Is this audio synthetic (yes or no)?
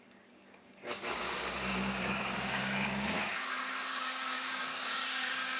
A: yes